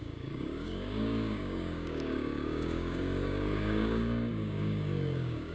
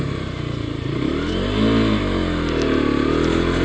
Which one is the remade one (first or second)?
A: first